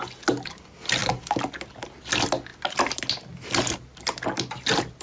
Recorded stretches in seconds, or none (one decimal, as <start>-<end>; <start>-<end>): 0.0-5.0

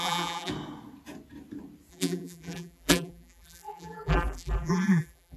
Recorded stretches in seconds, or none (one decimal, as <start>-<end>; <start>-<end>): 0.5-1.9

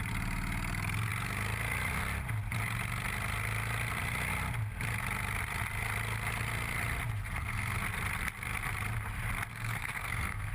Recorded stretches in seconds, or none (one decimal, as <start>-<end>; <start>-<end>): 0.0-7.2; 7.8-9.5

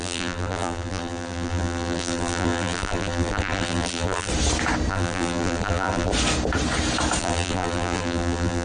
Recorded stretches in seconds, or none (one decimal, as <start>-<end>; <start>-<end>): 4.3-4.9; 6.1-7.2

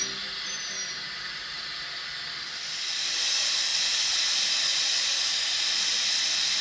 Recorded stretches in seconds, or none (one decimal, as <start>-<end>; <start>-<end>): 0.0-3.7; 4.3-6.6

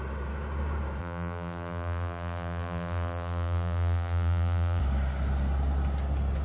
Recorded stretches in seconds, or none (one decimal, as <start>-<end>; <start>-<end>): 0.0-1.0; 4.8-6.4

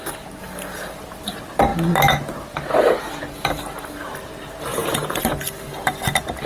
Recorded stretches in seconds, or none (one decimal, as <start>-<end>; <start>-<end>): 0.0-4.7; 5.2-6.5

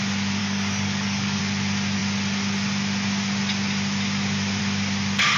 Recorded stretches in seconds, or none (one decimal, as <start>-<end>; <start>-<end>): 0.0-0.4; 1.4-5.4